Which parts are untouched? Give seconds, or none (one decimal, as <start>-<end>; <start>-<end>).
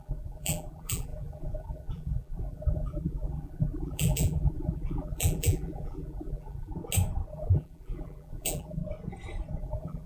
6.7-7.3; 8.8-9.6